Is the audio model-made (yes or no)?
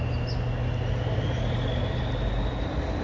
no